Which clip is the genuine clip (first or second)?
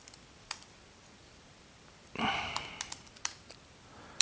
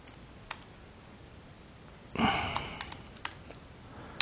second